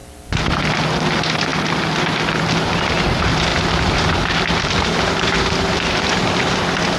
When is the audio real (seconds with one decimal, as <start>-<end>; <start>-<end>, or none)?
0.7-3.5; 5.4-7.0